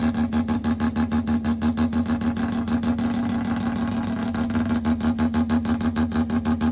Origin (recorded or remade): recorded